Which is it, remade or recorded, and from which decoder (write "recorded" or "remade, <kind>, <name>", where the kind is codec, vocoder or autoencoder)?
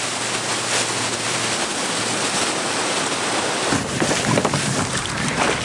recorded